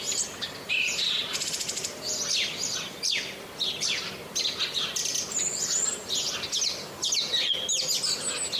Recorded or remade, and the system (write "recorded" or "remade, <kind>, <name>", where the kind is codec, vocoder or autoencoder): recorded